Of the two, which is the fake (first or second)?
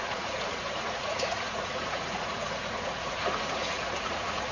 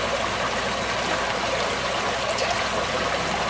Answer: first